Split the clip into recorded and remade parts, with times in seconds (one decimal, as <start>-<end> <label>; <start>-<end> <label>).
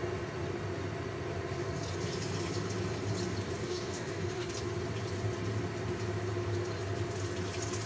0.0-3.6 recorded; 3.6-4.5 remade; 4.5-7.9 recorded